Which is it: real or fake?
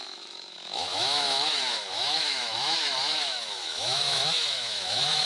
fake